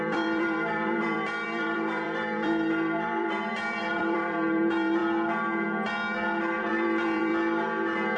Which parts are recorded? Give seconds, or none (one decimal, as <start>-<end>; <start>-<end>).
5.0-6.6; 7.3-8.2